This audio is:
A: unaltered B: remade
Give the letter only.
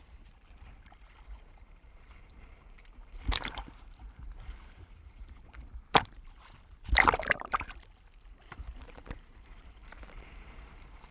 B